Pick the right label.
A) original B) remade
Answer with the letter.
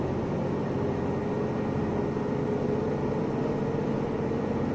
A